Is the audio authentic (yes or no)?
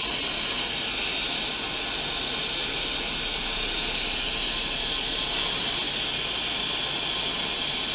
yes